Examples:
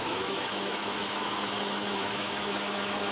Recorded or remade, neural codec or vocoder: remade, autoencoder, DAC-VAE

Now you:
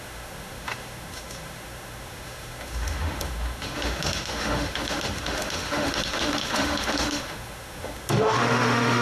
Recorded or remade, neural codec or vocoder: remade, autoencoder, DAC-VAE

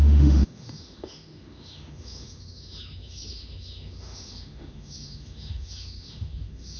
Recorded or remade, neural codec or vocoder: remade, autoencoder, DAC-VAE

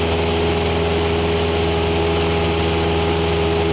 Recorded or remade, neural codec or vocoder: recorded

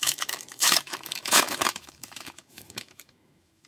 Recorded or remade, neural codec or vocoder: remade, autoencoder, DAC-VAE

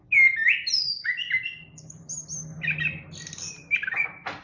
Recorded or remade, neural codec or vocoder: recorded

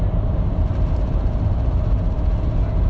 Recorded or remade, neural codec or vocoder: recorded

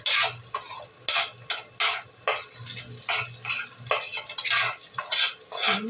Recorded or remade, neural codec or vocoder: recorded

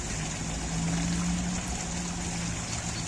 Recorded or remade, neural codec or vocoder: recorded